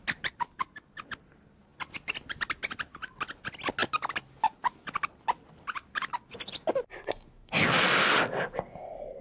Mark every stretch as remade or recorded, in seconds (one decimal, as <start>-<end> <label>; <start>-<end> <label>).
0.0-9.2 recorded